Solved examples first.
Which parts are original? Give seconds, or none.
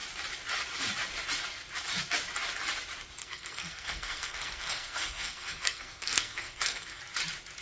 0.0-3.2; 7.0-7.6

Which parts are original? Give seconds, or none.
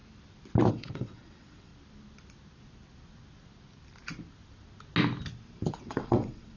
0.0-0.7; 1.7-5.7